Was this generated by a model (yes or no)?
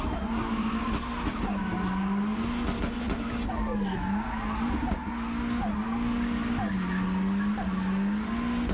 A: no